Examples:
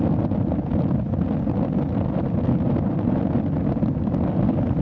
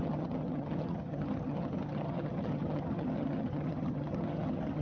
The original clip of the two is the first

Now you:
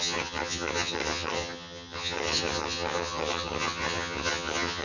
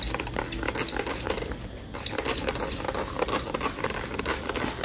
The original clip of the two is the second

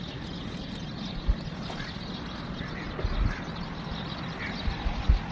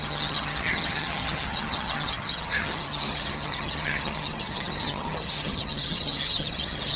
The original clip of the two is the first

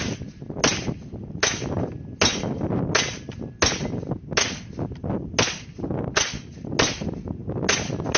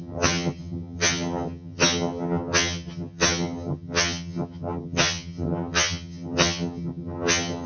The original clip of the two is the first